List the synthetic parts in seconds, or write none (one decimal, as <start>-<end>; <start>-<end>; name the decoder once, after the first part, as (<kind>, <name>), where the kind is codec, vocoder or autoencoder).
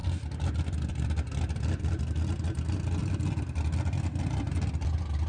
0.0-2.0 (vocoder, BigVGAN v2); 3.0-4.7